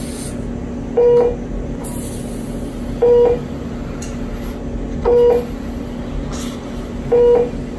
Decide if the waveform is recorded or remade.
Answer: recorded